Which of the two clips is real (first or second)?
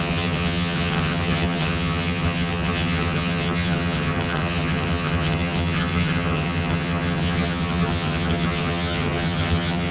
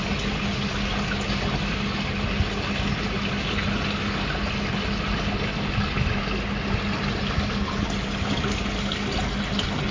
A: second